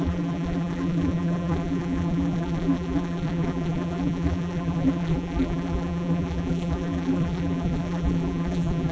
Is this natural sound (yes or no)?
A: no